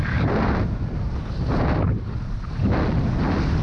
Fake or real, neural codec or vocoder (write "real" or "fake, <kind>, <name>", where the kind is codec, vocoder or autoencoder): real